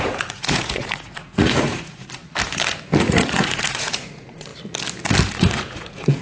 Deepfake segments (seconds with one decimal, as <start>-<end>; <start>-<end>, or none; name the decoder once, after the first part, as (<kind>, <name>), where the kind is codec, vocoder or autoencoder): 0.0-2.2 (vocoder, Vocos); 3.0-4.5; 5.3-6.2